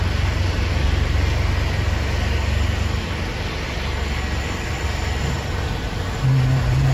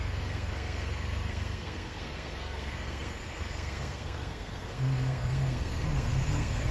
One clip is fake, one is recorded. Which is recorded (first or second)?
first